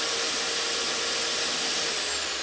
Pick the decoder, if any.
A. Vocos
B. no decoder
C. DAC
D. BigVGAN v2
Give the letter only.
B